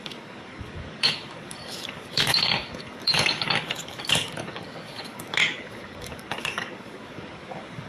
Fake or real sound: fake